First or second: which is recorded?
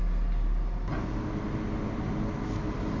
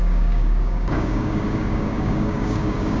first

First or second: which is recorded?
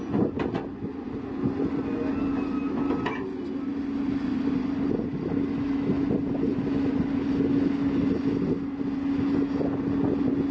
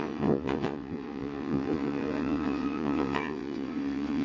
first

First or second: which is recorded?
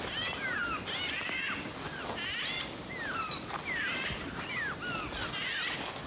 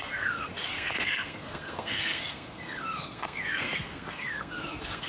first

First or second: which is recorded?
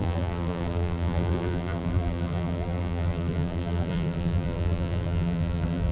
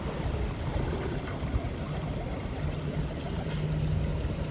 second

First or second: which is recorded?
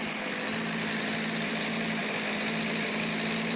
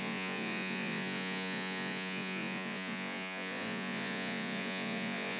first